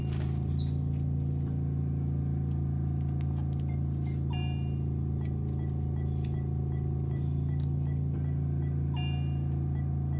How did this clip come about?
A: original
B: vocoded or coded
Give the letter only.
A